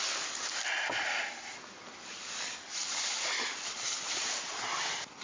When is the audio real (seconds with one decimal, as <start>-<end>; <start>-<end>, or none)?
0.0-2.8; 4.7-5.2